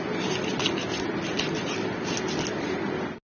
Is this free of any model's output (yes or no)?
yes